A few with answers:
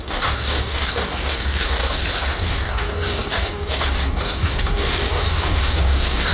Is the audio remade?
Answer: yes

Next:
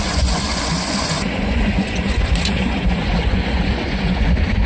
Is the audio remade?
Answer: yes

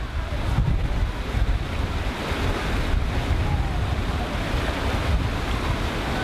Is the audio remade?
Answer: no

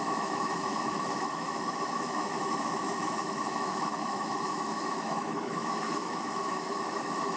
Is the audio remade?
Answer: yes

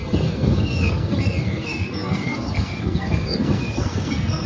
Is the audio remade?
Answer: yes